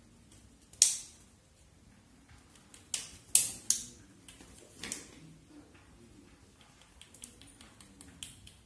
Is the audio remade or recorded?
recorded